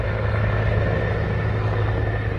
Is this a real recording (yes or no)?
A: yes